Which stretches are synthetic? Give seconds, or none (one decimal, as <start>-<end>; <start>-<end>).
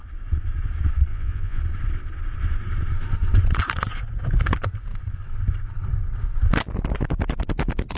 1.1-1.6